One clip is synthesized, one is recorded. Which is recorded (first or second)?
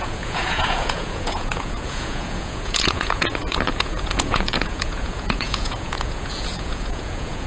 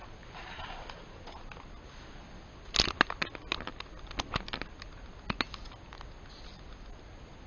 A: second